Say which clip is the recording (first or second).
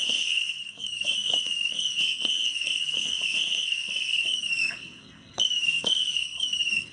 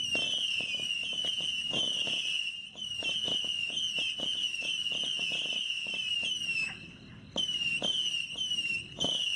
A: second